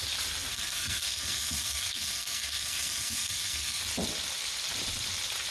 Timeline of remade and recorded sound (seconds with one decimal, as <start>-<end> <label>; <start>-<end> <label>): 0.0-0.5 recorded; 0.5-3.8 remade; 3.8-5.5 recorded

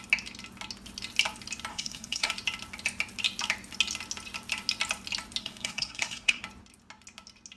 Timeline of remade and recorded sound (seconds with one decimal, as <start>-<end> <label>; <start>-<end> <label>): 0.0-1.7 recorded; 1.7-2.3 remade; 2.3-5.4 recorded; 5.4-6.4 remade; 6.4-7.6 recorded

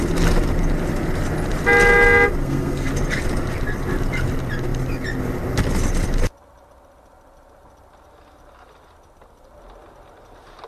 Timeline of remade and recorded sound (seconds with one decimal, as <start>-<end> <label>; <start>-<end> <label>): 0.0-2.4 recorded; 2.4-2.9 remade; 2.9-10.7 recorded

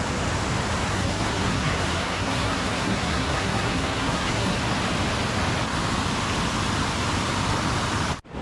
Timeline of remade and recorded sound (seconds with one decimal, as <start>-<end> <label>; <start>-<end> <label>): 0.0-0.9 recorded; 0.9-4.6 remade; 4.6-8.4 recorded

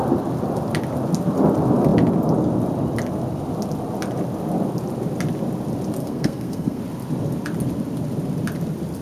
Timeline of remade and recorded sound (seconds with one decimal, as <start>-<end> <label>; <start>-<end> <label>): 0.0-6.0 recorded; 6.0-6.8 remade; 6.8-9.0 recorded

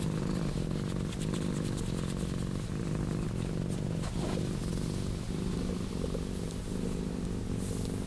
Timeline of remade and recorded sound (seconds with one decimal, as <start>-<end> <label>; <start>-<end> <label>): 0.0-8.1 recorded

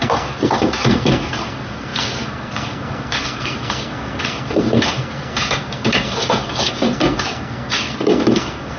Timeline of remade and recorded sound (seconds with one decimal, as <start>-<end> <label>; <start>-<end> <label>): 0.0-8.8 remade

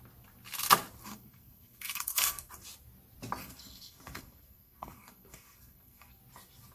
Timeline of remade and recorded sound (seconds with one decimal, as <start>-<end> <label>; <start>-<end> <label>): 0.0-1.1 recorded; 1.1-2.5 remade; 2.5-3.4 recorded; 3.4-6.2 remade; 6.2-6.7 recorded